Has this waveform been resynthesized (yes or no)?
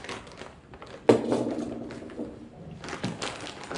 no